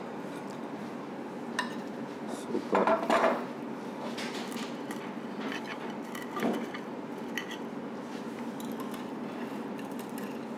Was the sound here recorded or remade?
recorded